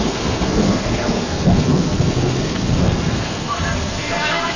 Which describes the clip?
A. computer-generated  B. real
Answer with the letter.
A